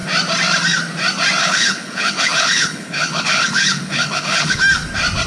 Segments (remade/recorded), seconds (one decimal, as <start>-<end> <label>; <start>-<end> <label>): 0.0-1.4 recorded; 1.4-4.6 remade; 4.6-5.3 recorded